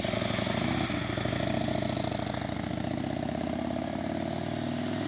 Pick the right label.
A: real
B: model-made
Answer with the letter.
A